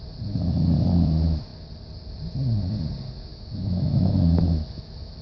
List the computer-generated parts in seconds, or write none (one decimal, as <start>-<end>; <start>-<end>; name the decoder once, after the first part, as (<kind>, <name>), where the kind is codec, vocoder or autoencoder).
3.3-5.2 (autoencoder, DAC-VAE)